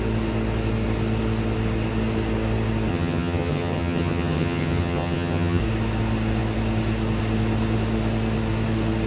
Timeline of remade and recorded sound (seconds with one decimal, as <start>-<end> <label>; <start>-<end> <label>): 0.0-2.9 recorded; 2.9-5.6 remade; 5.6-9.1 recorded